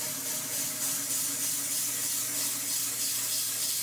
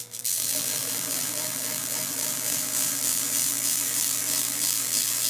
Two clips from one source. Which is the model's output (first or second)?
second